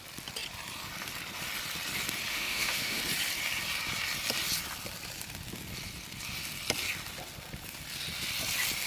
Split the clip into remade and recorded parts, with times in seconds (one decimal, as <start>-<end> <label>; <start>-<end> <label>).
0.0-2.3 recorded; 2.3-3.0 remade; 3.0-8.9 recorded